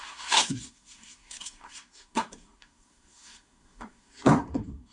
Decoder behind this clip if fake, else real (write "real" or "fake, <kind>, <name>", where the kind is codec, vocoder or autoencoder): fake, codec, SNAC